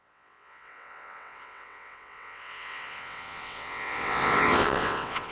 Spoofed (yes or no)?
yes